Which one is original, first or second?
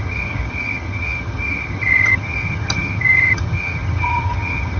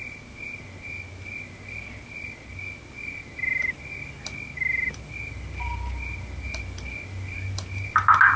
second